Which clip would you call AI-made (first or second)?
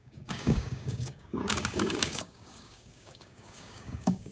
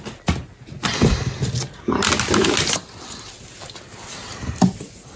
first